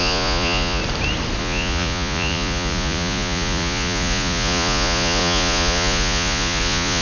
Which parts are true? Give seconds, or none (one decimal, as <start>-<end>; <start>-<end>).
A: 0.8-1.4